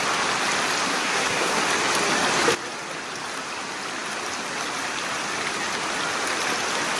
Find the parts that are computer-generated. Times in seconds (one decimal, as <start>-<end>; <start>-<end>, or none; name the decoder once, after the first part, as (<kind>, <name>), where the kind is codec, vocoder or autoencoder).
0.9-1.6 (codec, SNAC)